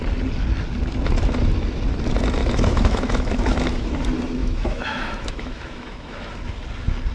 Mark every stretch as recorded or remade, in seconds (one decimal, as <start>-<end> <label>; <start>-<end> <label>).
0.0-2.4 recorded; 2.4-3.9 remade; 3.9-4.4 recorded; 4.4-6.3 remade; 6.3-7.1 recorded